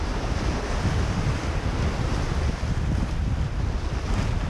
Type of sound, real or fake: real